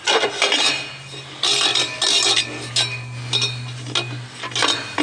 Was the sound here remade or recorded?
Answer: recorded